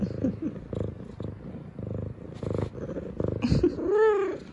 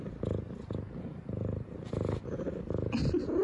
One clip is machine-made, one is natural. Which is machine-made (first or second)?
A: second